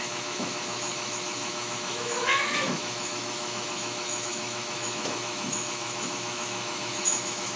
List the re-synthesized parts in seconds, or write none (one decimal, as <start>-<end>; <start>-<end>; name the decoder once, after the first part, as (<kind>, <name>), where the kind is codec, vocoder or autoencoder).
0.0-7.6 (autoencoder, DAC-VAE)